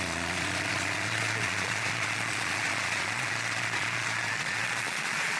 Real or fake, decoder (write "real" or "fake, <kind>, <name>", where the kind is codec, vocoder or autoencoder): fake, vocoder, Vocos